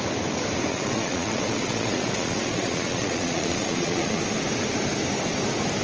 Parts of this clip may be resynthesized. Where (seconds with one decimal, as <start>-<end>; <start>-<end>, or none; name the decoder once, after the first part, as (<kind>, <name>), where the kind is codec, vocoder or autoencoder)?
0.7-4.2 (vocoder, Vocos)